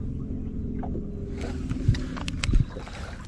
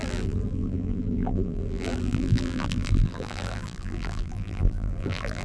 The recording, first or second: first